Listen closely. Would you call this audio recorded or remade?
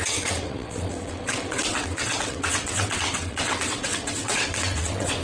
remade